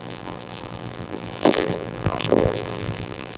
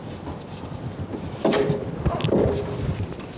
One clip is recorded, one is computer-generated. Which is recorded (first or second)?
second